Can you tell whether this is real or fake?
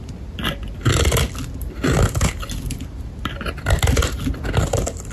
real